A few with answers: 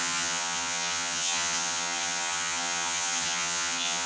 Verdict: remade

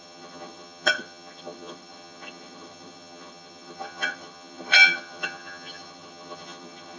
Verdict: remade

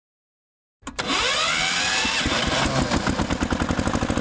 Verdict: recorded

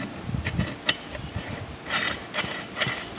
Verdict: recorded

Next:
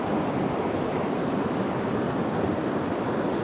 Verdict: recorded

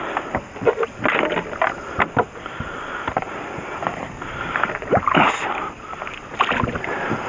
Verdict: recorded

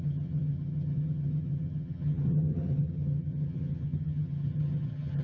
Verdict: remade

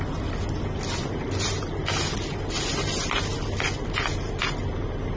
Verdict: recorded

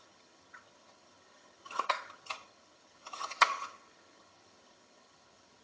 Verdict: remade